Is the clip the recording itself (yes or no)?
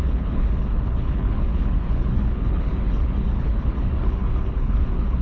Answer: no